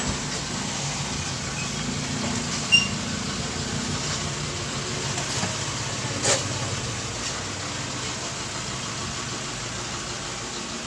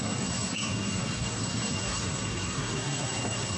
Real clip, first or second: first